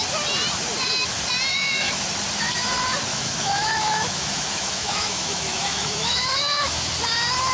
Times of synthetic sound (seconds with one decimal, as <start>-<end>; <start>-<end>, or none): 1.5-2.0; 3.1-6.9